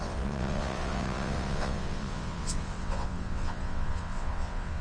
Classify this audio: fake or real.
fake